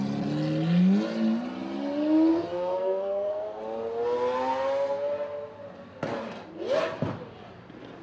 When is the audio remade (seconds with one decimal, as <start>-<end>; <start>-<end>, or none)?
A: 2.3-3.6